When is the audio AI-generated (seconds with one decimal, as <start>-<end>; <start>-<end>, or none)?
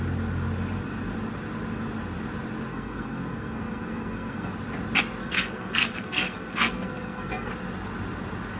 2.7-4.5; 5.2-7.5